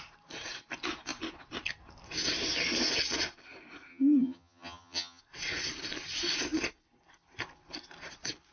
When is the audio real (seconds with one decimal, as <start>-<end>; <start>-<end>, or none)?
0.0-3.9; 5.2-8.5

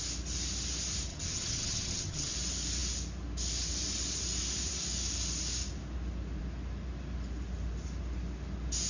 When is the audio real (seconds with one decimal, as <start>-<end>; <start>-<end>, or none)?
0.0-1.1; 2.3-8.9

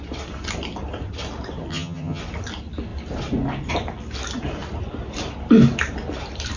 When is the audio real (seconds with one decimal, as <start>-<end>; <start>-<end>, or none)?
0.0-1.7; 2.2-6.6

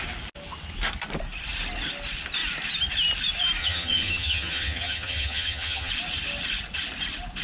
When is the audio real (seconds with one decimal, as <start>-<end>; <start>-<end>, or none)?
0.0-3.6; 5.9-7.4

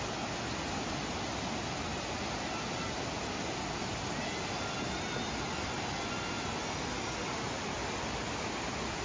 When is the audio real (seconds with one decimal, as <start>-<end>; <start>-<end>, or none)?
0.0-9.0